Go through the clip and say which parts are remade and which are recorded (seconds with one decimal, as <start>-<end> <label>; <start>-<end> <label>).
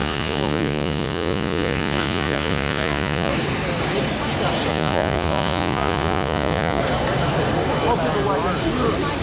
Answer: 0.0-3.3 remade; 3.3-4.7 recorded; 4.7-6.8 remade; 6.8-9.2 recorded